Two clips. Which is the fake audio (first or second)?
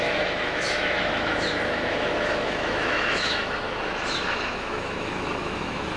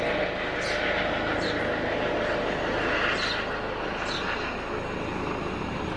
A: first